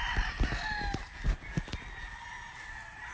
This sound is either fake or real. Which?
real